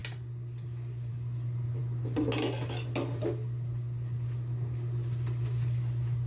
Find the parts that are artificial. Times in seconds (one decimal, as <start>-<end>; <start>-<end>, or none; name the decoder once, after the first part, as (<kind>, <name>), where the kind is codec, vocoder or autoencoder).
none